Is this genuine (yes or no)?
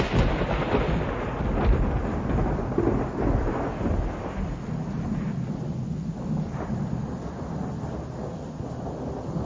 yes